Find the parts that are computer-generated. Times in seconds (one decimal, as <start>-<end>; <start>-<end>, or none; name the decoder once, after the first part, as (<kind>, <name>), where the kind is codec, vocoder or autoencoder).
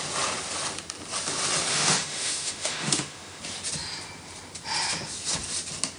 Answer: 1.7-3.4 (autoencoder, DAC-VAE)